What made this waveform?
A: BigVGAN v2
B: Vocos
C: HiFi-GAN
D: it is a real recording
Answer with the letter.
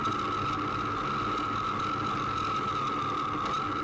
D